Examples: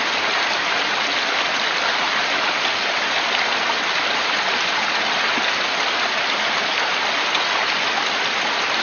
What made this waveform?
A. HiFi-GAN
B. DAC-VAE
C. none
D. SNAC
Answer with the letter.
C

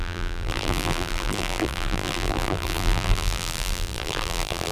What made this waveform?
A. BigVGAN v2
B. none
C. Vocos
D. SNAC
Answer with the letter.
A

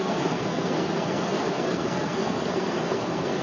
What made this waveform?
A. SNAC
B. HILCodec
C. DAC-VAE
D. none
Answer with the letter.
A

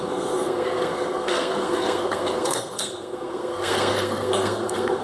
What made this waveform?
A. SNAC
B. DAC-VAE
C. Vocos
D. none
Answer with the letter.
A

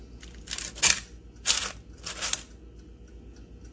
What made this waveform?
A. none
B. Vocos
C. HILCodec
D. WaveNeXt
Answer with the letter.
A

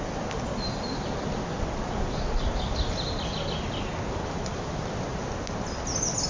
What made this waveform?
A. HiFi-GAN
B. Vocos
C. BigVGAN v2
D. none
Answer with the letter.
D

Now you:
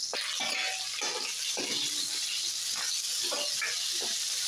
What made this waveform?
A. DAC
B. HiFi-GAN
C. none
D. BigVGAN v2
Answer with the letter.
C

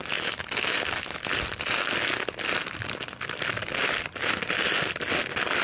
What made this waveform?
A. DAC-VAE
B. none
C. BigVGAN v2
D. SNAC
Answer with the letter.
B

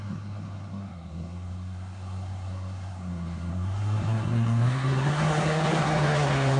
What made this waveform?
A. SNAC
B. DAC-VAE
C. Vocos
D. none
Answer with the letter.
A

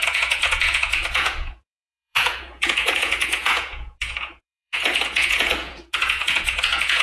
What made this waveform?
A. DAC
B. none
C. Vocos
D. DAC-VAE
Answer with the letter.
C